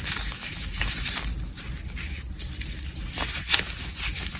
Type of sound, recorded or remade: recorded